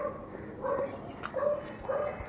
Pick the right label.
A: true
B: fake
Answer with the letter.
A